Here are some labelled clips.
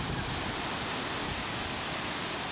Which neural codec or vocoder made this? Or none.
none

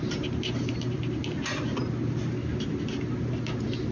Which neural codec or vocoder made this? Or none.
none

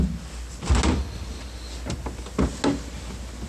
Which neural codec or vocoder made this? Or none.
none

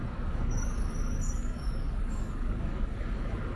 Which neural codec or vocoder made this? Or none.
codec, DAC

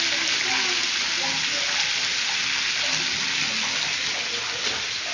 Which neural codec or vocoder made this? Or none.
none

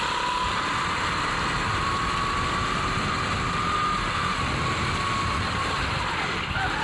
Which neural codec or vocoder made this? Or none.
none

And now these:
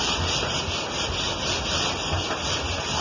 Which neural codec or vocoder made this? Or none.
none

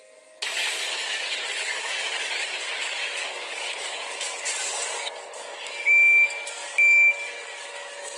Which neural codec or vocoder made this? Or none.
codec, DAC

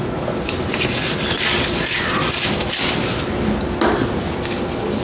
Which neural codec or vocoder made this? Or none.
none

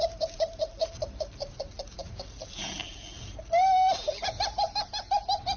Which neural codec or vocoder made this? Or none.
none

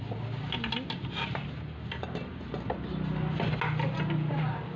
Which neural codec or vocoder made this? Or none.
none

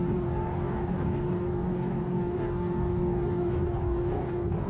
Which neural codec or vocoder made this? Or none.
codec, DAC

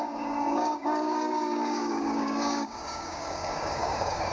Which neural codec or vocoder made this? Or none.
codec, DAC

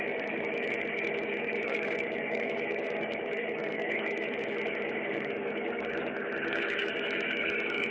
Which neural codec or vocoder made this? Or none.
codec, DAC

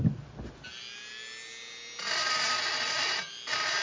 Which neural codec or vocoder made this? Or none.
none